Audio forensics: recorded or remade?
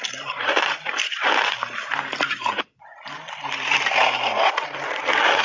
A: recorded